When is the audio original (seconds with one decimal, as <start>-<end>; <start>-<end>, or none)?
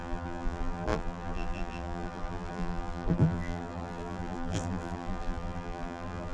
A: none